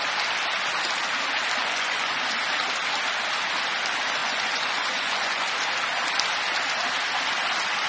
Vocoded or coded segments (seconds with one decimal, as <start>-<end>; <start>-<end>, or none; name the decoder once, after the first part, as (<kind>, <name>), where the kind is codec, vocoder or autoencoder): 1.6-2.4 (vocoder, Vocos); 4.2-5.5